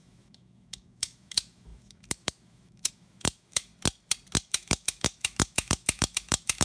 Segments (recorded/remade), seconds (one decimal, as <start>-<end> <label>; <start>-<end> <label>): 0.0-3.7 remade; 3.7-4.5 recorded; 4.5-6.6 remade